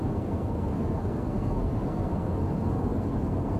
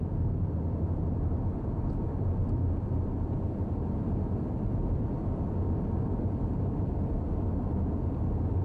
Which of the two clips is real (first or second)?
second